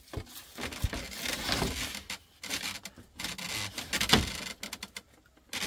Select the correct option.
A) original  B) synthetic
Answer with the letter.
A